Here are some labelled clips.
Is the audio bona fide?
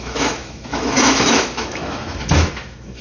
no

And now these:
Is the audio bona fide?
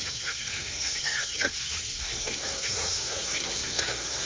no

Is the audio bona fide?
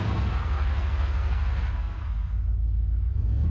no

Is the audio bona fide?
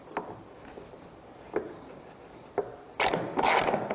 yes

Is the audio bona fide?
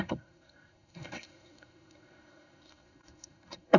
no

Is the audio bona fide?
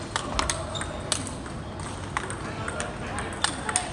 yes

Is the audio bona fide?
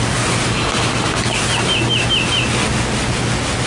yes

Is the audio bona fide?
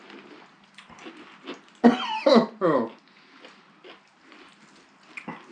yes